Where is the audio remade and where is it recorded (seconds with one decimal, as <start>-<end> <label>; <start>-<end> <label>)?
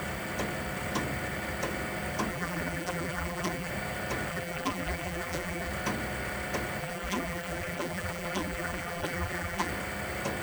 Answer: 0.0-2.3 recorded; 2.3-3.7 remade; 3.7-4.3 recorded; 4.3-5.7 remade; 5.7-6.8 recorded; 6.8-9.7 remade; 9.7-10.4 recorded